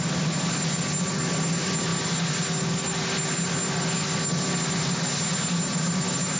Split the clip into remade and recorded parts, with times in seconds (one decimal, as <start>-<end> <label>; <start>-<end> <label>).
0.0-6.4 recorded